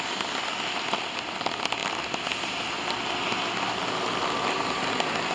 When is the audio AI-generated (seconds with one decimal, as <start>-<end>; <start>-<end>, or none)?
none